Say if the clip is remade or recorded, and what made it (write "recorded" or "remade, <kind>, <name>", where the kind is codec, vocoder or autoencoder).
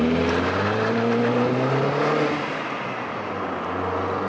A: recorded